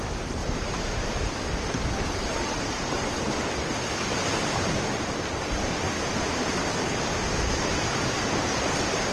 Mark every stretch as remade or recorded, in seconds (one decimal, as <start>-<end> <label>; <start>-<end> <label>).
0.0-0.4 recorded; 0.4-3.5 remade; 3.5-9.1 recorded